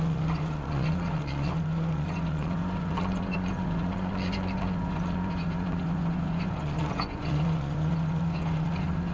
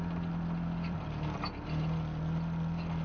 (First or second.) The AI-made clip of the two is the first